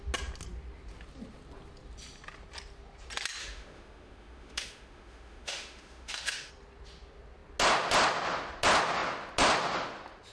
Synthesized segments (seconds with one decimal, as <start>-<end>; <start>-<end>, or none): 3.4-6.5